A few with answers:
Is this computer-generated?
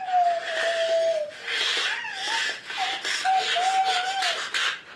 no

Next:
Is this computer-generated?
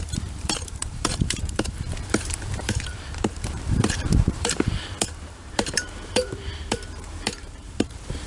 yes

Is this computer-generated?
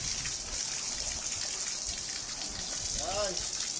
no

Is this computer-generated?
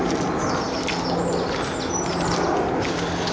no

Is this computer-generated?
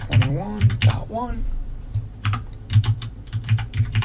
yes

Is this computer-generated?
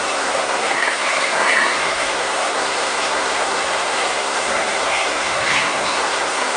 yes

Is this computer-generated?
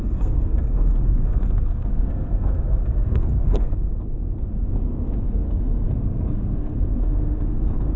yes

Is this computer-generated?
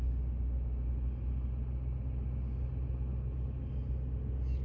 no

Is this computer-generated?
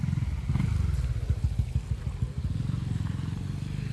no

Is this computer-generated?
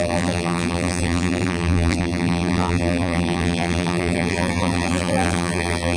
yes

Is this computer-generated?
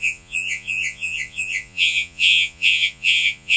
yes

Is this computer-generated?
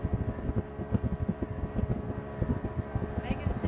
no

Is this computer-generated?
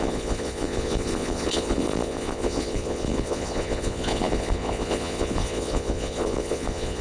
yes